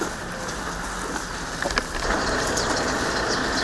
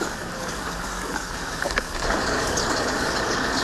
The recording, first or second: first